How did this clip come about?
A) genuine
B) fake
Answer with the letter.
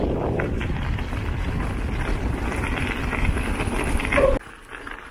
A